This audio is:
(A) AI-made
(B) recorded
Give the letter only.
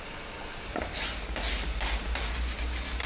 B